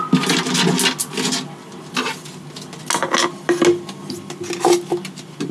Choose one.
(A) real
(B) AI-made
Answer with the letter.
A